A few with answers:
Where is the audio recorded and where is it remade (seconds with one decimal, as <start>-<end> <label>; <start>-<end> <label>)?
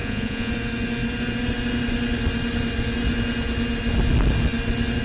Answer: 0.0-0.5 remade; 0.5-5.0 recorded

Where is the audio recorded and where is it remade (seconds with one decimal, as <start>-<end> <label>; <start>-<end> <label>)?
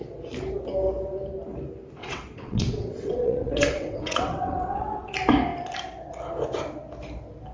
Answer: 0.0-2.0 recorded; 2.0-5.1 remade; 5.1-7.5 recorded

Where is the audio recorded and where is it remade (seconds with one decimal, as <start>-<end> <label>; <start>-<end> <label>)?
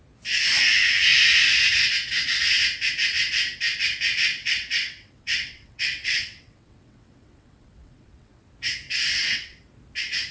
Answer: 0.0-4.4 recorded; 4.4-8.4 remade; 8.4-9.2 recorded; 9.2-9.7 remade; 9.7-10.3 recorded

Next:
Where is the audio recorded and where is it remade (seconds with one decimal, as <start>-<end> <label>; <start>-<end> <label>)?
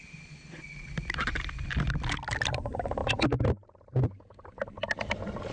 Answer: 0.0-5.5 recorded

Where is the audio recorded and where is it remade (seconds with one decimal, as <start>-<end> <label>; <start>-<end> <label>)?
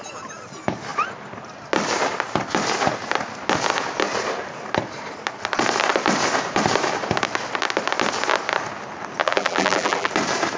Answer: 0.0-9.2 recorded; 9.2-10.1 remade; 10.1-10.6 recorded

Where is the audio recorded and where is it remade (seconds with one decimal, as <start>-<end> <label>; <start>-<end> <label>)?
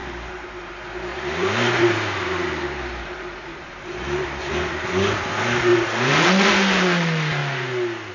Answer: 0.0-0.7 remade; 0.7-1.1 recorded; 1.1-5.2 remade; 5.2-5.7 recorded; 5.7-6.5 remade; 6.5-8.1 recorded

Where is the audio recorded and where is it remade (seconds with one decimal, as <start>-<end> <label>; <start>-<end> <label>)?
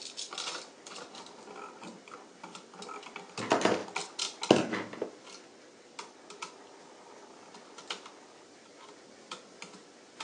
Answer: 0.0-10.2 recorded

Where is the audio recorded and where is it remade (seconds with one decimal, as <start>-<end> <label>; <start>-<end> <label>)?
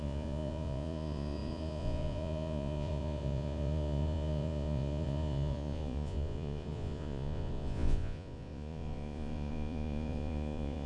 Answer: 0.0-10.9 remade